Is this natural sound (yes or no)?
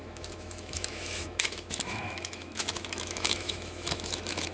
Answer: no